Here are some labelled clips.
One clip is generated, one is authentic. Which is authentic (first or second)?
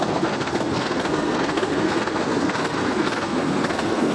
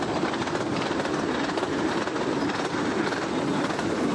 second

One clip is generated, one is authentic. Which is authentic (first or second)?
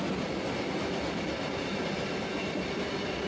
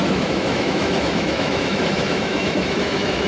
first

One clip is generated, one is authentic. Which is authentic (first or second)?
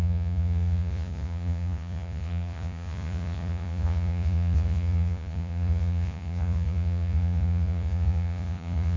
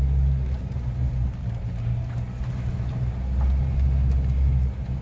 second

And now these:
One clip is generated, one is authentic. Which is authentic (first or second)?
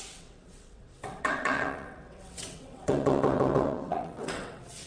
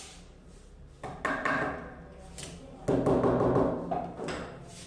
second